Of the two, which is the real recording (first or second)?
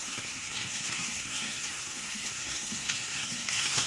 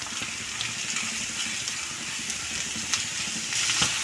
second